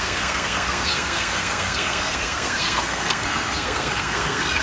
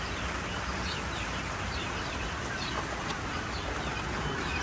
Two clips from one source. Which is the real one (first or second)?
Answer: second